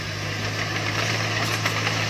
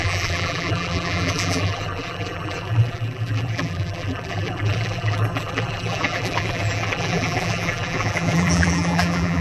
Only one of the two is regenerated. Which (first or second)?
second